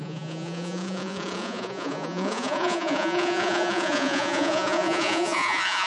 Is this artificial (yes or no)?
yes